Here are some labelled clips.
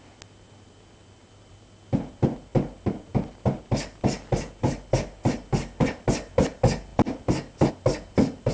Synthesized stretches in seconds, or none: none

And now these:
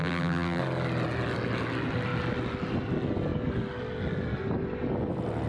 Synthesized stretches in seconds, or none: 0.0-0.6 (vocoder, BigVGAN v2)

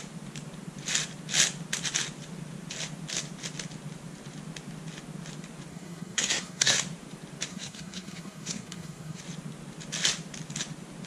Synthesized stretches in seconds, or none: 5.7-6.8 (codec, SNAC); 7.5-9.2

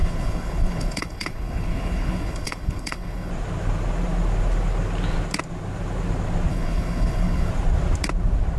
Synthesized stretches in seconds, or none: 0.0-3.3 (codec, HILCodec); 6.5-7.5

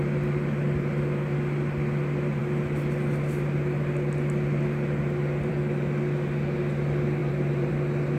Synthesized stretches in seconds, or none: 7.2-7.7 (vocoder, BigVGAN v2)

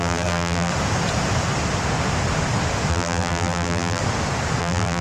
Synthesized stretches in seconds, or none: 0.0-0.7 (vocoder, BigVGAN v2); 2.9-4.0; 4.6-5.0

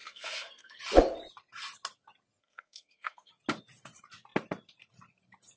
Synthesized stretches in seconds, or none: 0.0-0.8 (codec, SNAC); 2.4-3.3

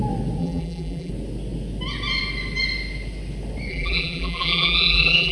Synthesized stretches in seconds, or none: 0.4-1.1 (vocoder, BigVGAN v2); 3.7-5.3